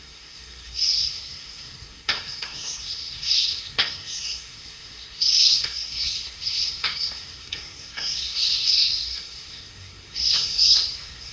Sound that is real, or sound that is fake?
fake